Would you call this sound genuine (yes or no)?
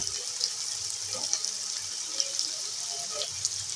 yes